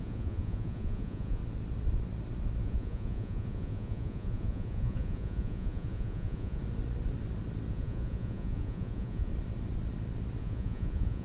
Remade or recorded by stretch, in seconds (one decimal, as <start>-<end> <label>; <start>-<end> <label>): 0.0-1.4 remade; 1.4-2.6 recorded; 2.6-6.6 remade; 6.6-7.7 recorded; 7.7-9.3 remade; 9.3-10.4 recorded; 10.4-11.2 remade